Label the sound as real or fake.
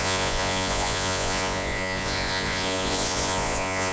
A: fake